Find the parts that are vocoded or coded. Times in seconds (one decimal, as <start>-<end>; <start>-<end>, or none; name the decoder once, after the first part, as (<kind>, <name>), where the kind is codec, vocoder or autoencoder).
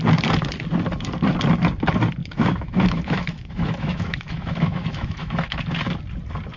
2.2-5.6 (autoencoder, DAC-VAE)